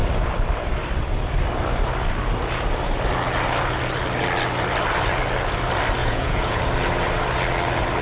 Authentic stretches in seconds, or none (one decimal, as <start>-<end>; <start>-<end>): 0.0-6.0; 6.6-8.0